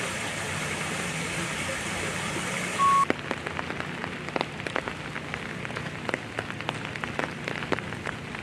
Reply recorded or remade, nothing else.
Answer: recorded